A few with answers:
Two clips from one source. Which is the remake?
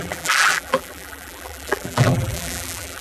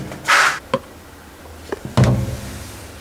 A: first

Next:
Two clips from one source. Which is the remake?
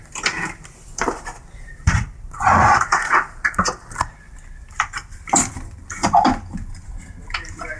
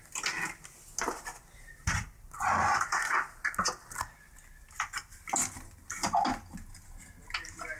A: first